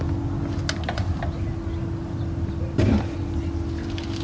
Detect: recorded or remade recorded